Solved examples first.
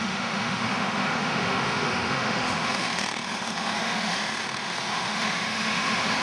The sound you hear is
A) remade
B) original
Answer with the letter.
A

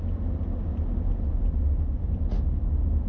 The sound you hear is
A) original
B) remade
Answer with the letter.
A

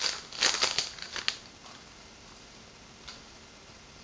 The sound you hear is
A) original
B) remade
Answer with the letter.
A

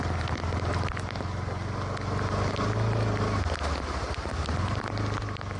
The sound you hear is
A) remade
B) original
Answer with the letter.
B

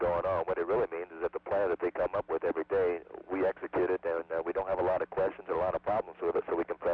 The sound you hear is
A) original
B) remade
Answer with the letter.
A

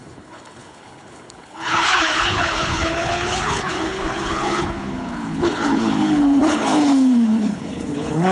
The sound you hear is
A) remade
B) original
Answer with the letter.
A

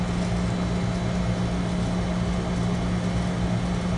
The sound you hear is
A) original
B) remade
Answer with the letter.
A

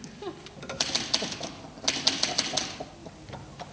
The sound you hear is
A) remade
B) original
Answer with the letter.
B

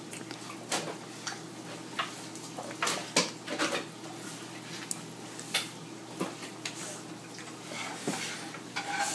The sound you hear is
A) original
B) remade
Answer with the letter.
A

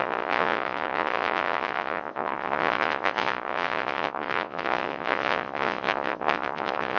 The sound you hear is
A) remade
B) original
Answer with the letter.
A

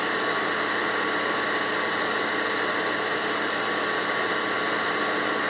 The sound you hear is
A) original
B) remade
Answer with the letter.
A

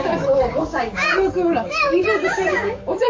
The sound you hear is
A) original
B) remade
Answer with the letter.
B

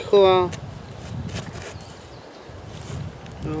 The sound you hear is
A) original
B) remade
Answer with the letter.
A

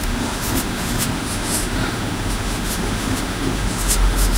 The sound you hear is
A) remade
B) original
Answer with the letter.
A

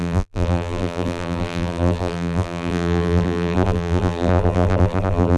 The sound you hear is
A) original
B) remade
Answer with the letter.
B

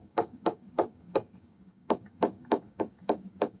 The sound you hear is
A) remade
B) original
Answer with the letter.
A